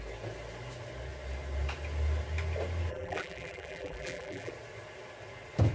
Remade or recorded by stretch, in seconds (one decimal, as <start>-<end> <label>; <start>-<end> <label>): 0.0-2.9 recorded; 2.9-4.5 remade; 4.5-5.7 recorded